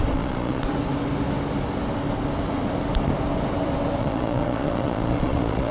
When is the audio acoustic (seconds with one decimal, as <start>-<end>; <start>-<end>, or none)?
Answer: 0.6-4.0

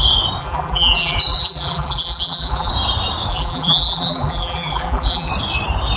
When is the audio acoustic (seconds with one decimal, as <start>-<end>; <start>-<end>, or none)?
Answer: 0.0-0.4; 2.7-3.3; 5.3-6.0

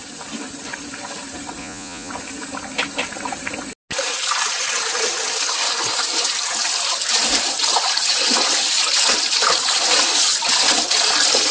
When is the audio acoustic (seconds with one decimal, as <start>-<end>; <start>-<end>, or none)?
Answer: 0.0-1.6; 2.1-11.5

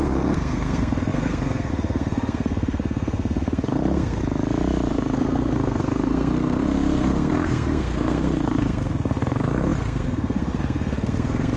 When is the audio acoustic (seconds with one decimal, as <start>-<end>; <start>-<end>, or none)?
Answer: 4.2-4.9

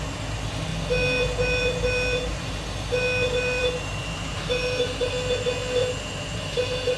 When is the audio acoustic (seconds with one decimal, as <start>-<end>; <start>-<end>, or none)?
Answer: 0.0-3.6; 5.1-5.8